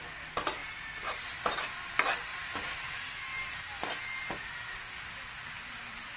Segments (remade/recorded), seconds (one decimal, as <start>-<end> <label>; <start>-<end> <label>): 0.0-6.2 recorded